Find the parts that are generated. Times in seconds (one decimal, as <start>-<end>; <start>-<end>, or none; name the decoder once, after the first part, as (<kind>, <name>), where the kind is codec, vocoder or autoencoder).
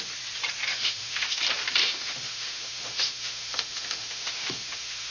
0.7-1.4 (autoencoder, DAC-VAE); 1.8-5.1